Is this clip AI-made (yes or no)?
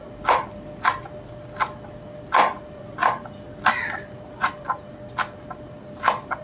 no